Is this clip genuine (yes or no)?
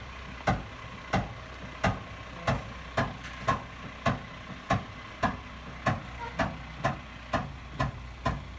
yes